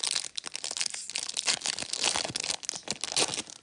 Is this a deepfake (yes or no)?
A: no